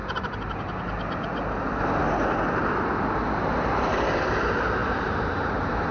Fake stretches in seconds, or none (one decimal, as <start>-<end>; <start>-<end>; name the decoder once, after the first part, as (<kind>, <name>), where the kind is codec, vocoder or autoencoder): 4.8-5.9 (vocoder, BigVGAN v2)